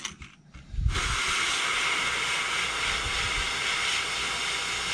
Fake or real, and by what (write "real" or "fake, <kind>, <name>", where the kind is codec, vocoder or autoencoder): real